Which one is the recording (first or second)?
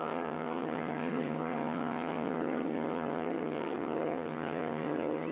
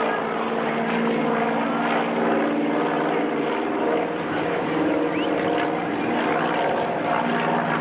second